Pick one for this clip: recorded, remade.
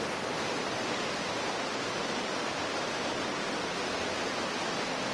recorded